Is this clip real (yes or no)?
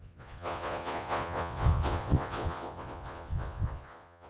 no